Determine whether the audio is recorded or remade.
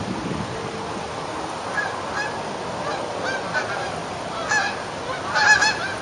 remade